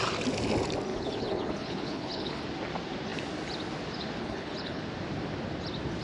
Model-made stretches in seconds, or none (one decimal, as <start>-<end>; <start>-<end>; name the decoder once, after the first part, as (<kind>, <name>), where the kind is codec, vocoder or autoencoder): 0.9-2.4 (codec, HILCodec); 4.2-4.8